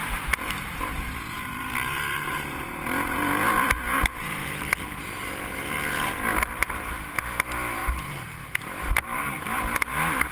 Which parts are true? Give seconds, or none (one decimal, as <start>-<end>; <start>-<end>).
5.0-6.3; 6.8-7.8; 8.7-10.3